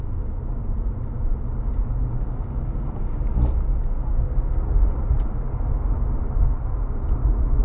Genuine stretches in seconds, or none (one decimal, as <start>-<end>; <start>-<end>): 0.0-7.6